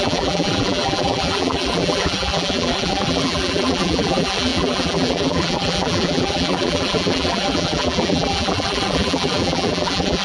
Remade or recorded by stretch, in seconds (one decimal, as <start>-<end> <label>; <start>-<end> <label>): 0.0-10.2 remade